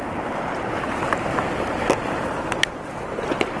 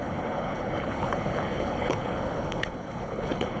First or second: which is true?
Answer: first